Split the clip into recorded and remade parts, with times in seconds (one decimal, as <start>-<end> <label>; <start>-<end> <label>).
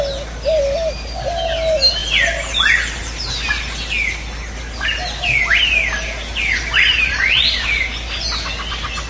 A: 0.0-6.9 recorded; 6.9-7.9 remade; 7.9-9.1 recorded